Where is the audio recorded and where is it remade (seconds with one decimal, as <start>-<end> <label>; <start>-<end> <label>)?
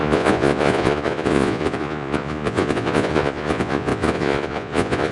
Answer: 0.0-5.1 remade